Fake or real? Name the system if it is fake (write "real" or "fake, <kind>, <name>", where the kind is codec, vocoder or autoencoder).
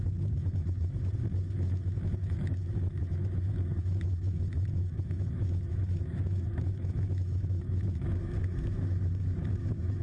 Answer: fake, autoencoder, DAC-VAE